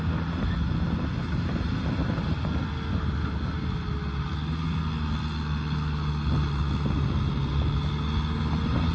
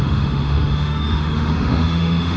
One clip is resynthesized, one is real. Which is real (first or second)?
first